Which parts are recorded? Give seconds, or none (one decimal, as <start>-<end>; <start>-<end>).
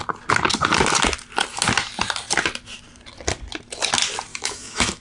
0.0-4.3